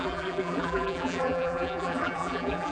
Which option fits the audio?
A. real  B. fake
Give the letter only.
B